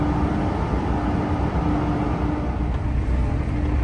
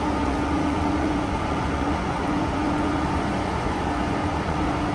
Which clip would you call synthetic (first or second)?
second